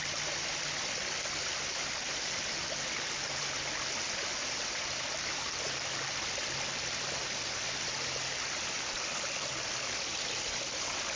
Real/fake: real